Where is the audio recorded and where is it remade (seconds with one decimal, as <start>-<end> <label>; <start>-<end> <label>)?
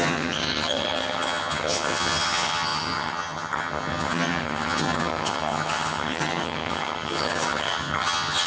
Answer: 0.0-8.5 remade